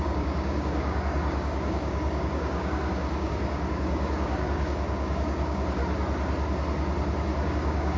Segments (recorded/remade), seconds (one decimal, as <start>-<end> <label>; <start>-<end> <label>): 0.0-5.8 remade; 5.8-7.5 recorded; 7.5-8.0 remade